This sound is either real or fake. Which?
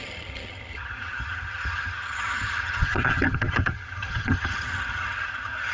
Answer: fake